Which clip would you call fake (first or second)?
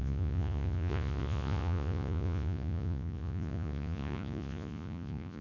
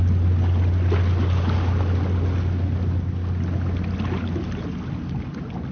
first